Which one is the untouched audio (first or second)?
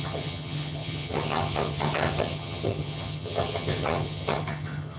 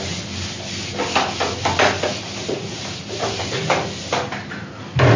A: second